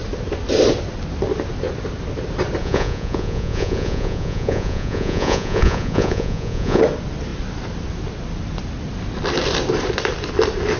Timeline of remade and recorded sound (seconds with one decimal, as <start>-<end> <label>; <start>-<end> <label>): 0.0-2.6 recorded; 2.6-6.8 remade; 6.8-10.8 recorded